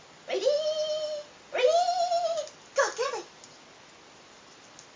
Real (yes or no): yes